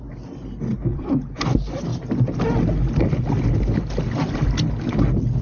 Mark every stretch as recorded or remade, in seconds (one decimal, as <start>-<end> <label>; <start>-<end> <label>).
0.0-0.9 recorded; 0.9-1.4 remade; 1.4-5.4 recorded